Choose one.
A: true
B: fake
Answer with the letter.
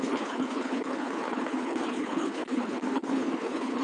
B